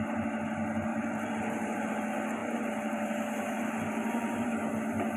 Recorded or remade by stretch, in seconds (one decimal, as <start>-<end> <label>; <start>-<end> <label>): 0.0-0.9 recorded; 0.9-1.9 remade; 1.9-2.4 recorded; 2.4-4.5 remade; 4.5-5.2 recorded